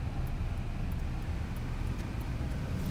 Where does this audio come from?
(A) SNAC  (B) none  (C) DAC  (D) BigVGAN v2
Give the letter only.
B